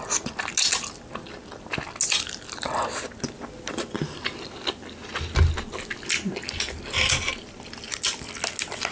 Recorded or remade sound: recorded